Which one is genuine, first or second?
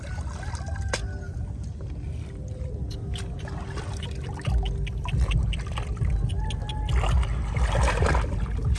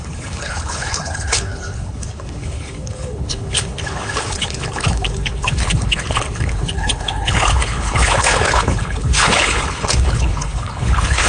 first